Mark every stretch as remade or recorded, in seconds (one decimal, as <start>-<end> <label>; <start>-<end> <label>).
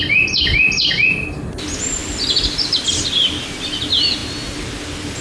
0.0-5.2 recorded